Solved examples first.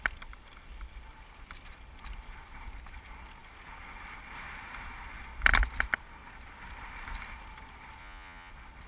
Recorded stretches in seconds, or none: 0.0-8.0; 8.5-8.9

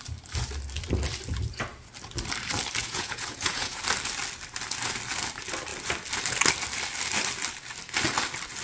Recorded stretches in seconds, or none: 0.0-2.8; 3.8-8.6

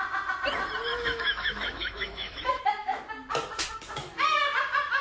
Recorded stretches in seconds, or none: 0.0-0.9; 3.0-5.0

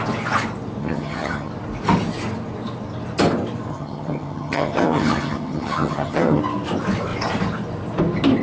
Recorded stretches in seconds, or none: 0.0-0.8; 1.5-3.7; 6.4-8.4